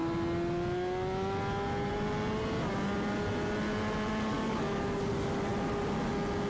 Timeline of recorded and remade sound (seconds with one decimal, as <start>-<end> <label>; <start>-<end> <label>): 0.0-4.3 recorded; 4.3-5.1 remade; 5.1-6.5 recorded